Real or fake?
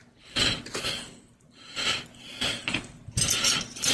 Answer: real